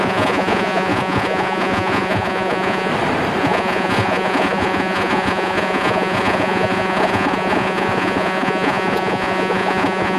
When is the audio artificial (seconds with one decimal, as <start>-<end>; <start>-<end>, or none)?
0.0-2.9; 3.4-10.2